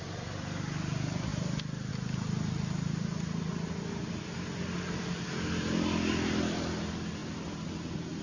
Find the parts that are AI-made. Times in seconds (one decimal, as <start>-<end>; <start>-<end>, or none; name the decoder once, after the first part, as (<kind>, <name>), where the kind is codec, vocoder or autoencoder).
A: none